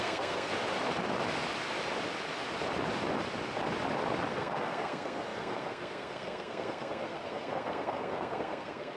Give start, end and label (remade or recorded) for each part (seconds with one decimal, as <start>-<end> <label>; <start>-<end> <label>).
0.0-0.5 remade; 0.5-4.3 recorded; 4.3-9.0 remade